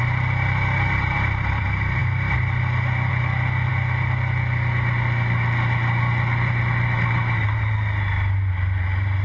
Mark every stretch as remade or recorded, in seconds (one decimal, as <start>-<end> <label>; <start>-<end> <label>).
0.0-2.0 remade; 2.0-3.1 recorded; 3.1-3.7 remade; 3.7-8.5 recorded; 8.5-9.2 remade